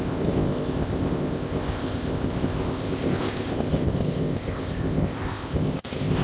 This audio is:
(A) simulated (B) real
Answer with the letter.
A